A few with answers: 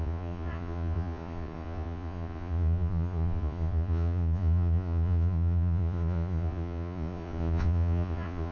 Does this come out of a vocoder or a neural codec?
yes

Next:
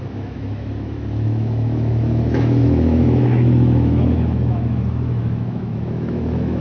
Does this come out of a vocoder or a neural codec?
yes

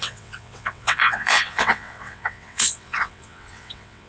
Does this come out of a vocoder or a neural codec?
yes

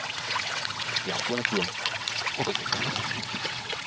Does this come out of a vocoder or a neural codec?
yes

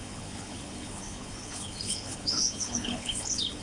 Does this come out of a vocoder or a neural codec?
yes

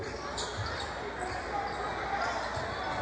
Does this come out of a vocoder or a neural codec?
no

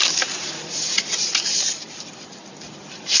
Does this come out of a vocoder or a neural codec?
no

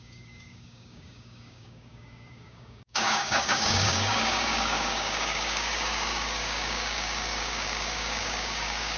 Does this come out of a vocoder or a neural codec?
yes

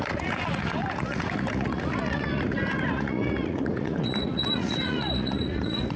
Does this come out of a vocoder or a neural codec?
yes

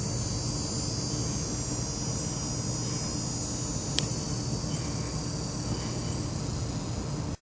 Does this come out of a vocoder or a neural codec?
no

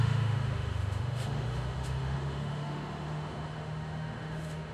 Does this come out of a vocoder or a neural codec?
yes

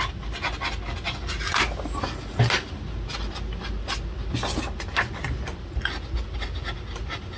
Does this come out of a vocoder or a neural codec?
no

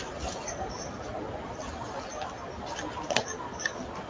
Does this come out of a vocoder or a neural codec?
no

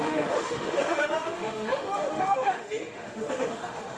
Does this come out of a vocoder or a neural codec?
yes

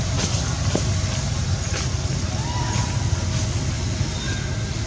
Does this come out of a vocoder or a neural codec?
no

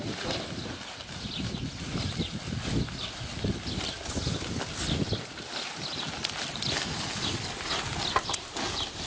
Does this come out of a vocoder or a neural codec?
no